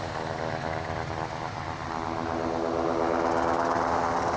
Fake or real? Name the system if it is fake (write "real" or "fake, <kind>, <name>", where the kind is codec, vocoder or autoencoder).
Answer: real